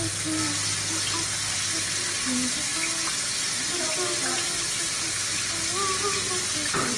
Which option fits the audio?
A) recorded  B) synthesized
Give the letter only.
A